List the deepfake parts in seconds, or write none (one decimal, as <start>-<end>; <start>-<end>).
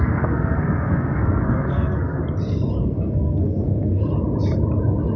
0.0-2.2; 2.8-4.0